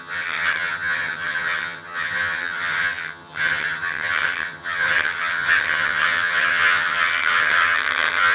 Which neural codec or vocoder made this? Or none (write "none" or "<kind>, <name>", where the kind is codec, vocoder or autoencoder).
vocoder, HiFi-GAN